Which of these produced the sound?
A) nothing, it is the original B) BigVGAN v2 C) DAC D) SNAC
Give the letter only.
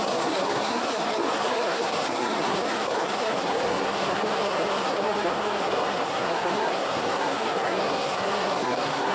D